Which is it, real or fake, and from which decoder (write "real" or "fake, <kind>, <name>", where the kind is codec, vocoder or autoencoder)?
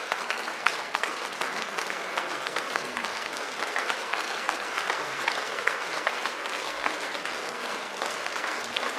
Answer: fake, codec, SNAC